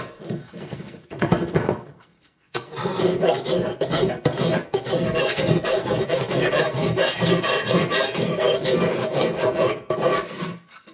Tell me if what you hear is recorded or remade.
remade